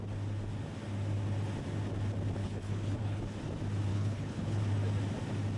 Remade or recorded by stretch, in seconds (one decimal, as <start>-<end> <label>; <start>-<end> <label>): 0.0-2.4 recorded; 2.4-3.2 remade; 3.2-3.9 recorded; 3.9-4.6 remade; 4.6-5.6 recorded